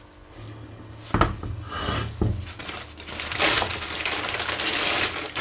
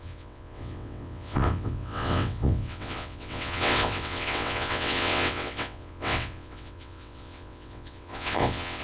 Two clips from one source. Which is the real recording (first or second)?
first